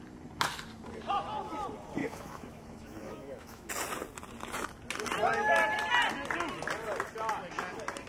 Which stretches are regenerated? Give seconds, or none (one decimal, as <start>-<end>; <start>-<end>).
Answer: 2.0-3.7